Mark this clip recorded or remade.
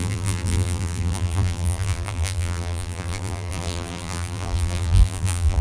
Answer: remade